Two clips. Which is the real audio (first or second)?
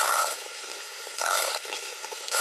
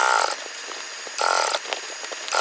second